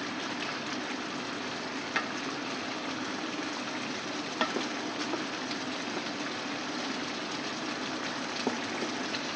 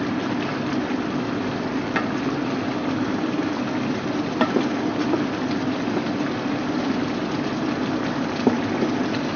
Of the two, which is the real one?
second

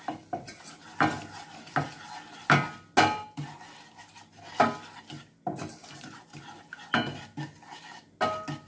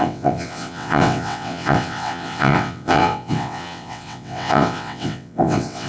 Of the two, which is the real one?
first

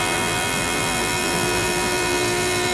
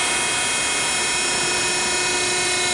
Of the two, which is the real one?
second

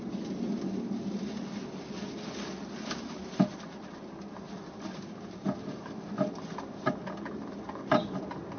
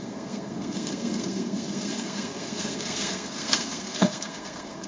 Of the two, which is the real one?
first